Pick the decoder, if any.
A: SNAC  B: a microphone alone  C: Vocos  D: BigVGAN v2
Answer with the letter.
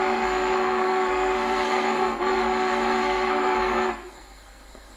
A